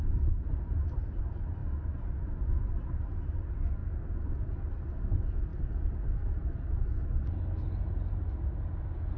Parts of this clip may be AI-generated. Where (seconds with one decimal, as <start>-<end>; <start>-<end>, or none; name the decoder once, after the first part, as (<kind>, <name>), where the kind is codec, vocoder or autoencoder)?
0.0-1.2 (vocoder, BigVGAN v2)